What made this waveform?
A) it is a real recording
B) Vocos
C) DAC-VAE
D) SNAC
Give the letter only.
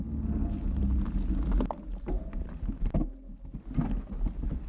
A